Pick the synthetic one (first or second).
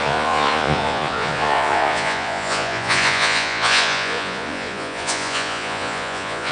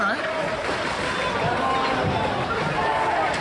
first